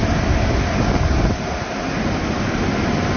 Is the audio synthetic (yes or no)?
no